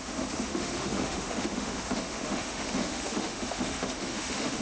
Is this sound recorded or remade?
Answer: remade